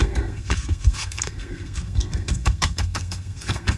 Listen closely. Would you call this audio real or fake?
fake